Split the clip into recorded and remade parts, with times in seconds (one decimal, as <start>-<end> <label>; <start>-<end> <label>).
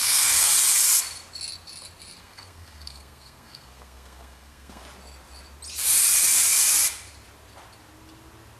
0.0-0.5 remade; 0.5-2.2 recorded; 2.2-4.8 remade; 4.8-8.6 recorded